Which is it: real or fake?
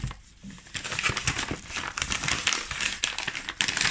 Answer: real